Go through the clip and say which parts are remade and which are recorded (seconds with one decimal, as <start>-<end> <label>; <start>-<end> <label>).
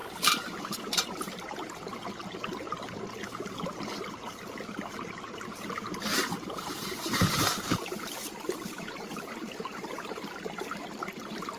0.0-0.6 recorded; 0.6-2.2 remade; 2.2-6.7 recorded; 6.7-11.6 remade